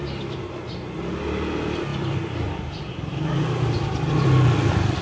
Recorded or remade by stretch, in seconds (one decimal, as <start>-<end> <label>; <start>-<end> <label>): 0.0-1.9 recorded; 1.9-5.0 remade